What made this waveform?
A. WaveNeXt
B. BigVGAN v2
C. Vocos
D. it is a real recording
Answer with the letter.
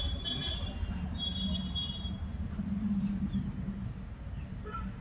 B